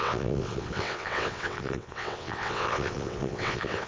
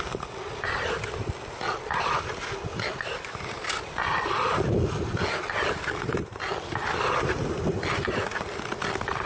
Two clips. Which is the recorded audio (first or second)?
second